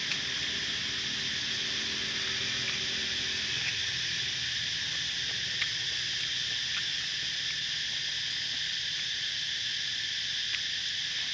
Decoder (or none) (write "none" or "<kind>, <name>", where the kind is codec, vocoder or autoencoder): none